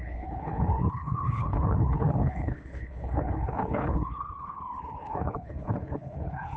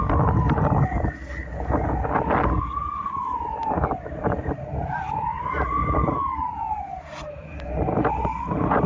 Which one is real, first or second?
second